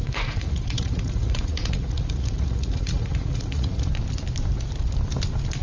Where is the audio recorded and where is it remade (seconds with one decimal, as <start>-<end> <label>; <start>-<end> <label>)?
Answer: 0.0-3.9 remade; 3.9-5.6 recorded